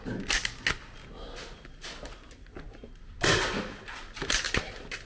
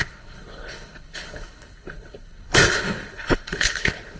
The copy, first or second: second